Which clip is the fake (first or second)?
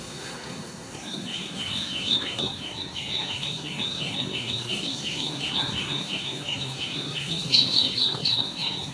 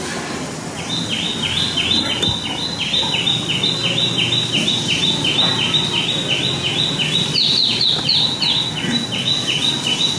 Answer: first